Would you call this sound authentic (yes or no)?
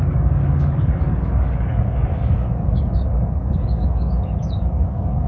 no